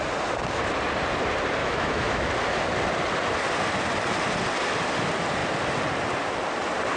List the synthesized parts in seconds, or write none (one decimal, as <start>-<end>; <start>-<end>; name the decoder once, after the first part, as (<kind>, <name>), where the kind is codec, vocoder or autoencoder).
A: 1.6-2.3 (autoencoder, DAC-VAE)